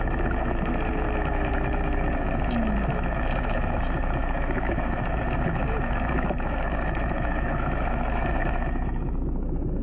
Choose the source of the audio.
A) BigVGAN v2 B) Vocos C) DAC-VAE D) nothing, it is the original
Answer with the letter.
C